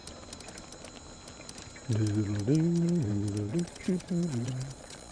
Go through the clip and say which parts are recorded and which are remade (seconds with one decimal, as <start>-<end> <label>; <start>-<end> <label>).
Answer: 0.0-3.5 recorded; 3.5-5.1 remade